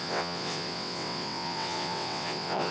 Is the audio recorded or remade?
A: remade